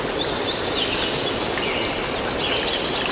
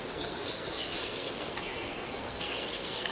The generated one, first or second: second